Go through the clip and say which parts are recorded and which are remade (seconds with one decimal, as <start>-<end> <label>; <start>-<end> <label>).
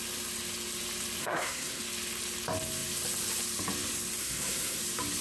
0.0-1.2 recorded; 1.2-1.8 remade; 1.8-4.2 recorded; 4.2-4.8 remade; 4.8-5.2 recorded